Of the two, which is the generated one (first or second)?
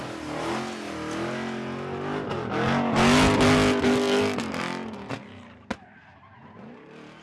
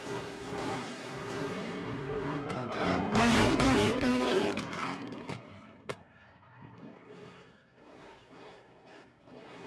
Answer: second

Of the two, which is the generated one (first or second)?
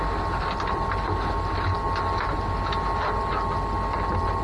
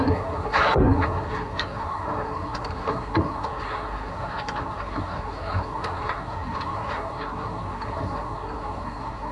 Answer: second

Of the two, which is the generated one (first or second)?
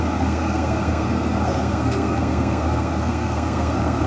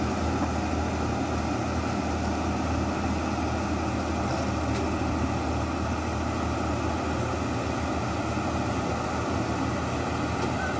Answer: first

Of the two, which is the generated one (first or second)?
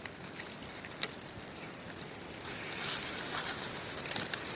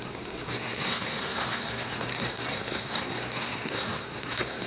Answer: second